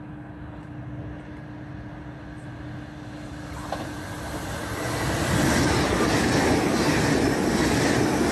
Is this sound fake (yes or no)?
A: no